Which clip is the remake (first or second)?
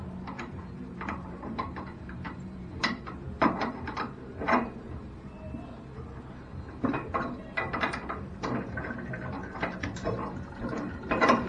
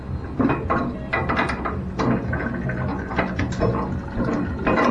first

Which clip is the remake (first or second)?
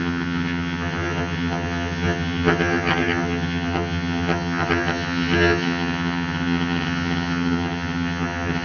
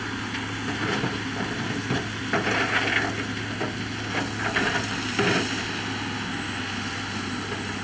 first